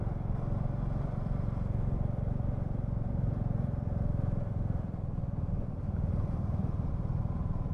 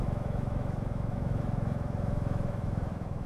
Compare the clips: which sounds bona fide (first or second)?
first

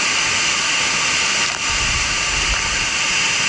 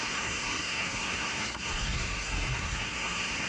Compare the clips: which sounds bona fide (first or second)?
first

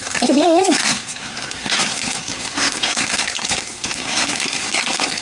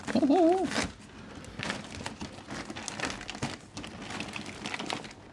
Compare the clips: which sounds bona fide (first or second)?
second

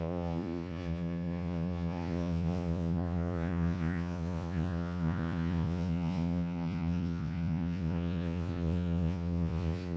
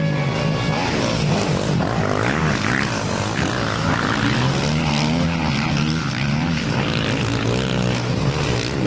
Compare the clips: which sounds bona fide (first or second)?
second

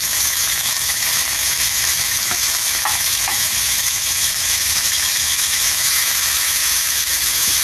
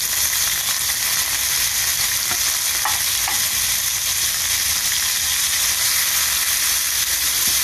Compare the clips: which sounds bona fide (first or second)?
second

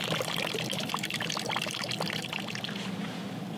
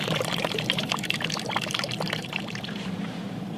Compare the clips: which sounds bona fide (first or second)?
first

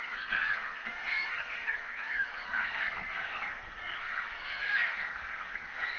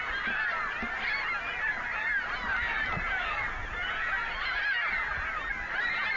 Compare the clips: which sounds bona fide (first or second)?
second